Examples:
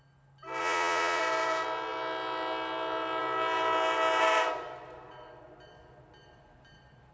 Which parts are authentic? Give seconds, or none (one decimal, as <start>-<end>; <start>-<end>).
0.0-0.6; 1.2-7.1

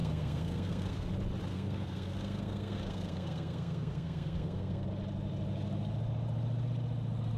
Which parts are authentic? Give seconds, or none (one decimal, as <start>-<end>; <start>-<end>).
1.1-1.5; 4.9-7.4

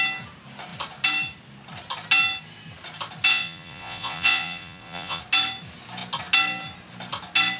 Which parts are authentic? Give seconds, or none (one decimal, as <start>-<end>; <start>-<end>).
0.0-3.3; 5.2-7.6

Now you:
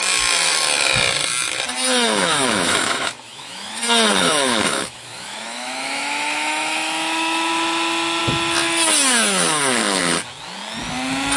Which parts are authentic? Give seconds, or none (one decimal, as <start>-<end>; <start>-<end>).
0.0-2.1; 3.8-4.2; 7.5-11.4

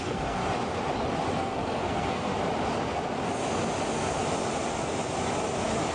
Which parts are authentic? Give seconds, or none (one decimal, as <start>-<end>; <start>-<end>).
0.4-1.4; 2.3-5.9